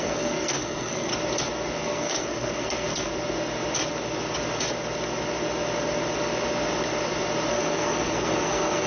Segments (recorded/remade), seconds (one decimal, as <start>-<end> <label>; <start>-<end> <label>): 0.0-1.1 remade; 1.1-1.8 recorded; 1.8-3.1 remade; 3.1-7.5 recorded; 7.5-8.9 remade